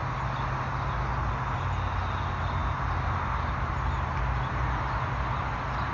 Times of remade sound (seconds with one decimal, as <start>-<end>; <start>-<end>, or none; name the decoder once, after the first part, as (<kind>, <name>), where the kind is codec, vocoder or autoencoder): none